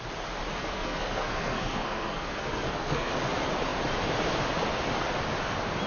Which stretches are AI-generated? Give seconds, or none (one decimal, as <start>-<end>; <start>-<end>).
0.6-3.1